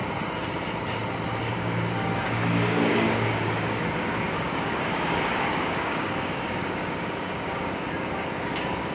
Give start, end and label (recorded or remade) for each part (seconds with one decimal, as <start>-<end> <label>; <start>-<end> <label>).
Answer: 0.0-1.5 recorded; 1.5-8.9 remade